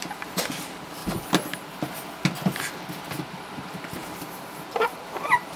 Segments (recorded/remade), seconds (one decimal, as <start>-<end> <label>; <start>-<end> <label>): 0.0-1.0 remade; 1.0-3.0 recorded; 3.0-5.6 remade